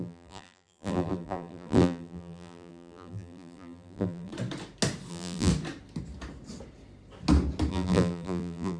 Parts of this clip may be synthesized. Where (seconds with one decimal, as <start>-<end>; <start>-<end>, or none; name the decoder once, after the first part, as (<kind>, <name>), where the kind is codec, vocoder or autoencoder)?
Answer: 0.0-4.3 (vocoder, BigVGAN v2); 5.1-5.5; 7.7-8.8